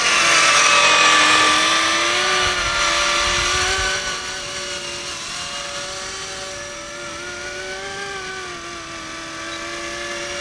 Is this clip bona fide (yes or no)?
yes